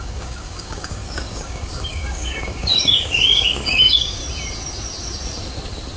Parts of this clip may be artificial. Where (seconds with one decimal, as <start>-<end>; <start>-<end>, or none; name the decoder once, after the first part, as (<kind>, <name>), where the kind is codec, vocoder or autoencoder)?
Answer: 0.0-4.2 (codec, DAC)